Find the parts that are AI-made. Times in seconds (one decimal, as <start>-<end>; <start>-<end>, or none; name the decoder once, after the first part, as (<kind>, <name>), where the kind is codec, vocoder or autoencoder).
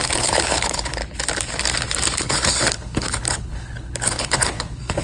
0.0-1.0 (codec, HILCodec); 2.2-5.0